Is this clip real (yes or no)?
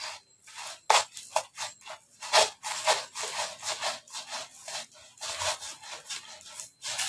yes